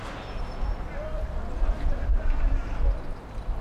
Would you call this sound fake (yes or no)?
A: no